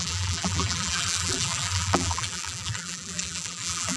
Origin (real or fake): fake